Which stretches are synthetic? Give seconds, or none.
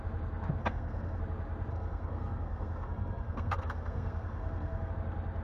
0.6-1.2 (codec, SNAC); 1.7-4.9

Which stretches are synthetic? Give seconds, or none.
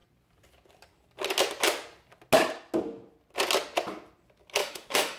4.6-5.2 (autoencoder, DAC-VAE)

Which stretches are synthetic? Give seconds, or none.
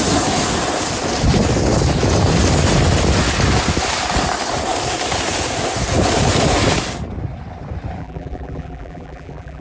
8.0-9.6 (vocoder, BigVGAN v2)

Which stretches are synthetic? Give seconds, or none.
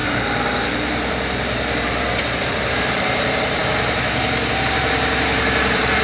0.0-6.0 (vocoder, BigVGAN v2)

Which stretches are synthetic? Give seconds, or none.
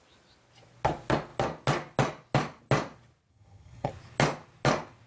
3.3-3.9 (vocoder, HiFi-GAN)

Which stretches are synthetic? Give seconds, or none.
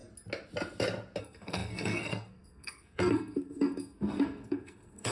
1.2-5.1 (codec, SNAC)